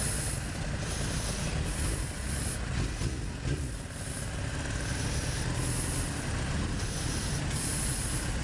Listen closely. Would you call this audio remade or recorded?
recorded